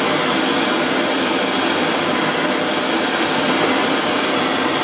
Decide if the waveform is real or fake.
real